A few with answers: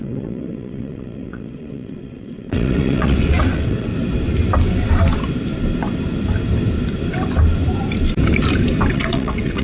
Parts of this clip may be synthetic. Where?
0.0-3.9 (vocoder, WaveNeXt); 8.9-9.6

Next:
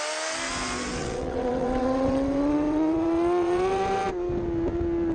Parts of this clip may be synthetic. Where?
1.0-4.1 (vocoder, WaveNeXt)

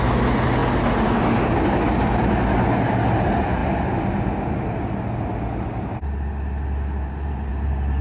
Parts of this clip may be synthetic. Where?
none

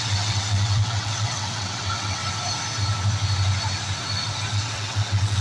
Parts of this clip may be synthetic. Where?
0.0-2.2 (vocoder, WaveNeXt); 4.5-5.4